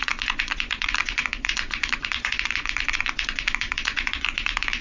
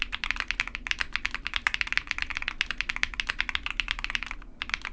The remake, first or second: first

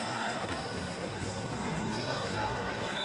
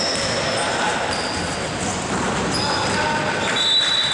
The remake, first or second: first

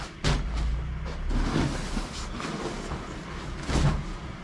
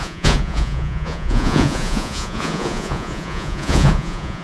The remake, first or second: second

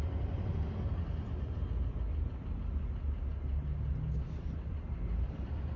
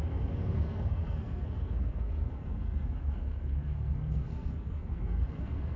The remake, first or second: second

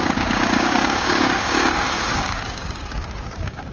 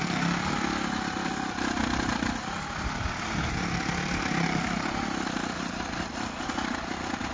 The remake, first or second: first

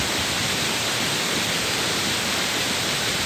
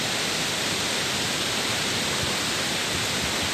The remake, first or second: first